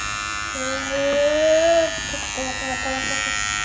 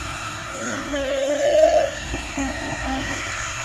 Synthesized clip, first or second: second